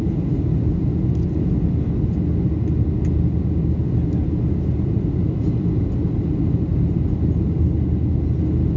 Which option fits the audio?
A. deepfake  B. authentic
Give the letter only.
B